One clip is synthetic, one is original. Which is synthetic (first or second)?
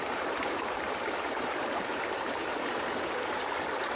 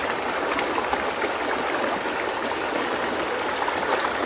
first